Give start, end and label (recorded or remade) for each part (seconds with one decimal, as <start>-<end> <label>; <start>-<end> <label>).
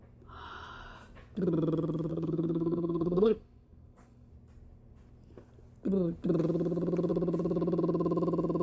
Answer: 0.0-2.1 recorded; 2.1-4.3 remade; 4.3-8.6 recorded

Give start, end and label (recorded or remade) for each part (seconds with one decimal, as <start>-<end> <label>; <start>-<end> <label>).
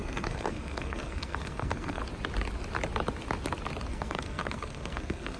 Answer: 0.0-2.0 remade; 2.0-3.9 recorded; 3.9-5.4 remade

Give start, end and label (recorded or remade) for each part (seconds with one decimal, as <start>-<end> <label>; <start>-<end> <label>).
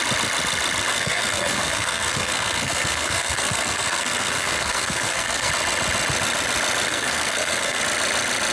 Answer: 0.0-0.9 recorded; 0.9-5.5 remade; 5.5-6.9 recorded; 6.9-7.8 remade; 7.8-8.5 recorded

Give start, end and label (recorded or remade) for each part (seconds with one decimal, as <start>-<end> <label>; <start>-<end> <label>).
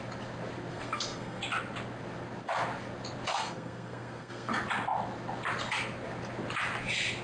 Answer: 0.0-0.7 recorded; 0.7-1.4 remade; 1.4-3.3 recorded; 3.3-4.5 remade; 4.5-7.2 recorded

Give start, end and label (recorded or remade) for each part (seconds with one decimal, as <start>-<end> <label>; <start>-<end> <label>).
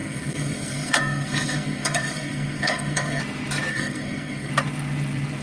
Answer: 0.0-3.2 remade; 3.2-3.7 recorded; 3.7-4.5 remade; 4.5-5.4 recorded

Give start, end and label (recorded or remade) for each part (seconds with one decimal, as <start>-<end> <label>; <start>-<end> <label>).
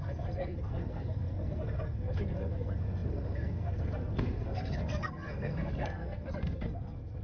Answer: 0.0-7.2 remade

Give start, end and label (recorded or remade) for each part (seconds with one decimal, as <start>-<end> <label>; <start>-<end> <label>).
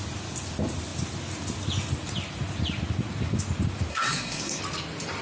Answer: 0.0-3.9 recorded; 3.9-4.6 remade; 4.6-5.2 recorded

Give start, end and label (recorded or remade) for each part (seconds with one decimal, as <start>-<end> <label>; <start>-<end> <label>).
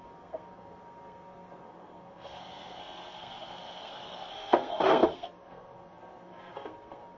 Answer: 0.0-7.2 remade